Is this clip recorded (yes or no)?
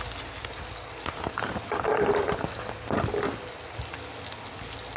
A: yes